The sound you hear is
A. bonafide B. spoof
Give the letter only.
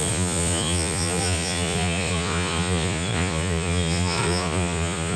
B